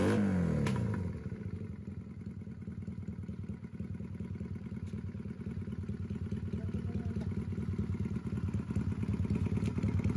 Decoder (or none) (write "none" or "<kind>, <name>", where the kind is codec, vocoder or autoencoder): none